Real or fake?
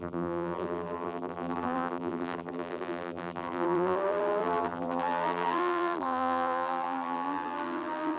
fake